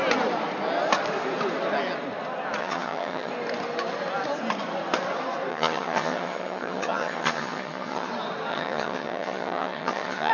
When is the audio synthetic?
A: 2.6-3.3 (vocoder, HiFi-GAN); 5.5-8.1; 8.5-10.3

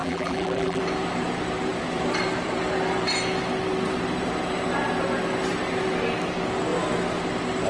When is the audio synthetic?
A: 0.0-0.8 (vocoder, BigVGAN v2)

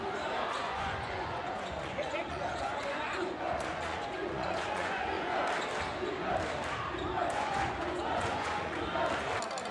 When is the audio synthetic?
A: 0.6-5.4 (vocoder, Vocos); 7.2-8.8

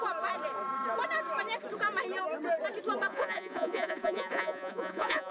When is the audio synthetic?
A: 3.1-5.3 (vocoder, Vocos)

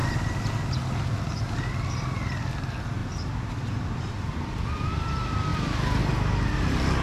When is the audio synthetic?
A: 3.0-4.6 (vocoder, BigVGAN v2)

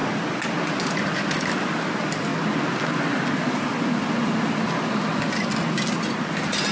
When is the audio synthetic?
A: none